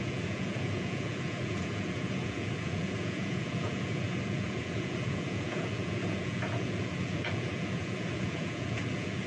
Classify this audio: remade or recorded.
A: remade